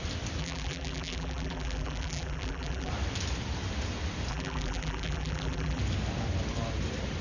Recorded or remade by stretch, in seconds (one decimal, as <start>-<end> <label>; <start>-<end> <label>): 0.0-0.4 recorded; 0.4-2.9 remade; 2.9-4.3 recorded; 4.3-5.8 remade; 5.8-7.2 recorded